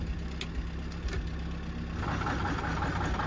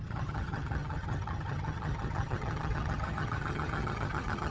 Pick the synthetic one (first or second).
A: second